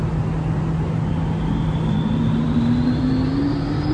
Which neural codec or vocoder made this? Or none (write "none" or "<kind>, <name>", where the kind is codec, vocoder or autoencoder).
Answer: none